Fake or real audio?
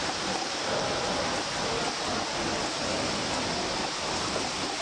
real